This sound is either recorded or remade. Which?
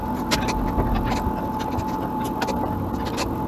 recorded